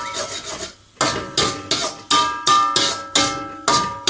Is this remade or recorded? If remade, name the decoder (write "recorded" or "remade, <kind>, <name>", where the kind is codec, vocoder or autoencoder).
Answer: recorded